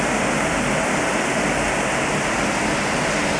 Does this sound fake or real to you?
real